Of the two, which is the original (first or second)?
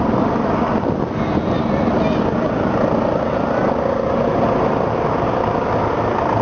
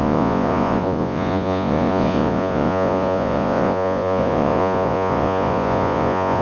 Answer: first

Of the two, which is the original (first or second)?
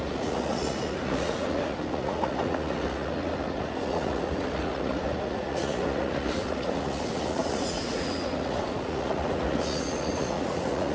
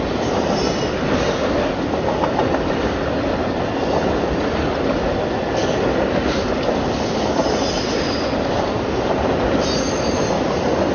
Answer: second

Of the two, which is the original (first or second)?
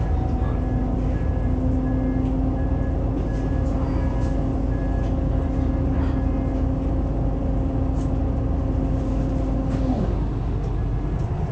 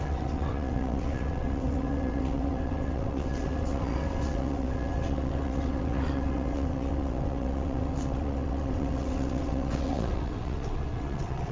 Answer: first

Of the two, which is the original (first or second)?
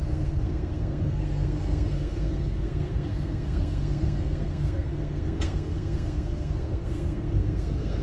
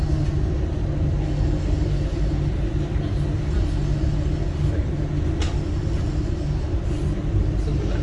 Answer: second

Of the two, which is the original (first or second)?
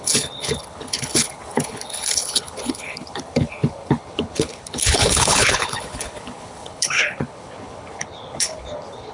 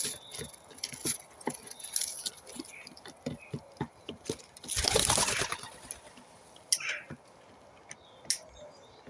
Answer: second